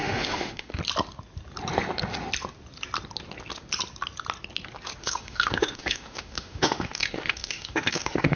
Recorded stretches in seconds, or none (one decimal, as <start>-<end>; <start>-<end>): 0.8-5.0